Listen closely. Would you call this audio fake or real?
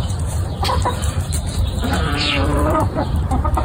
fake